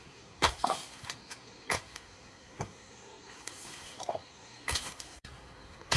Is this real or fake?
fake